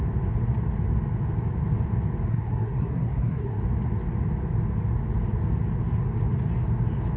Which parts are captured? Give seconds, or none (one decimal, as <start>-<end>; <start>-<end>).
0.0-2.3; 3.6-7.2